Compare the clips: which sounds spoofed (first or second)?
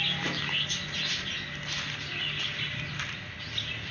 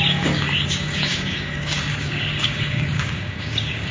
second